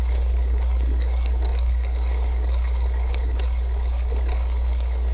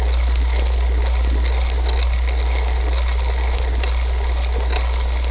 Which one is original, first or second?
second